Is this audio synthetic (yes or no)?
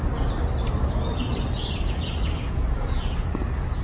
no